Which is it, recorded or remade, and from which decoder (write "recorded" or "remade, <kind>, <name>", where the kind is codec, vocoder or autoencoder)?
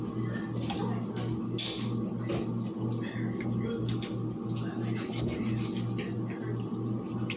recorded